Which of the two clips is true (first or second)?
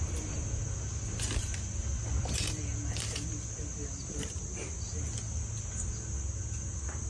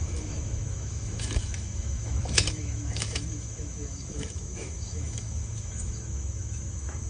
first